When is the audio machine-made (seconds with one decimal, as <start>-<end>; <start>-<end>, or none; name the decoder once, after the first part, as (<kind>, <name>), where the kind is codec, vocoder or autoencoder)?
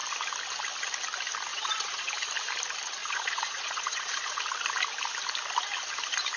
1.5-2.1 (vocoder, Vocos); 3.0-4.4